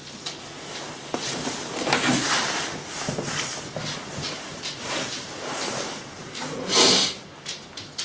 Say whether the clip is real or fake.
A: real